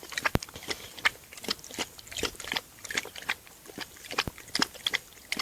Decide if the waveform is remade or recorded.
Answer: recorded